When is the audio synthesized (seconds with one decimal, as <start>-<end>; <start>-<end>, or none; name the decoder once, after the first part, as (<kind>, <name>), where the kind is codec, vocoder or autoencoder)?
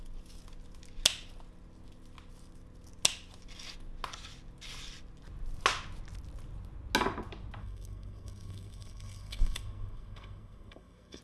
7.6-11.2 (codec, SNAC)